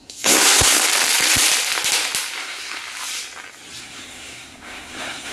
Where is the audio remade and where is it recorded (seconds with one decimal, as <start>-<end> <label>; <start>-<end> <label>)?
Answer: 0.0-0.8 remade; 0.8-2.4 recorded; 2.4-2.8 remade; 2.8-3.8 recorded; 3.8-5.3 remade